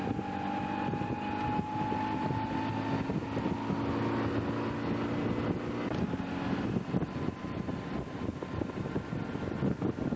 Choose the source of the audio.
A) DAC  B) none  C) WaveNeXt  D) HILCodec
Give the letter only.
B